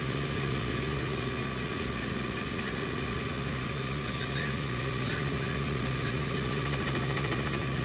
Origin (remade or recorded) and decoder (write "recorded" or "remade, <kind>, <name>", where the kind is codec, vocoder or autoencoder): remade, vocoder, Vocos